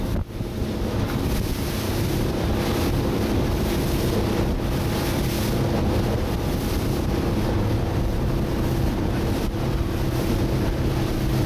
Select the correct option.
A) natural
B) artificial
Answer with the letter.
A